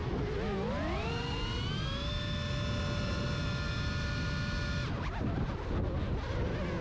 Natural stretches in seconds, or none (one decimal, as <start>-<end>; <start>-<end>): 0.0-6.8